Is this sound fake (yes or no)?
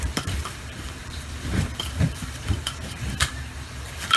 yes